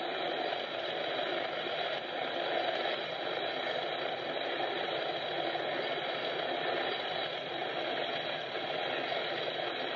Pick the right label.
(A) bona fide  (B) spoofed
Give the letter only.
A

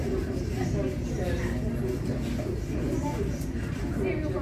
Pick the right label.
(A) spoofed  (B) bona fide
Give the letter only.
B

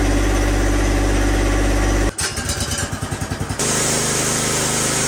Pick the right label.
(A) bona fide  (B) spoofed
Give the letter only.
A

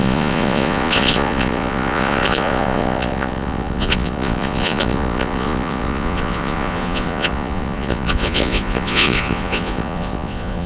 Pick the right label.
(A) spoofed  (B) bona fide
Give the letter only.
A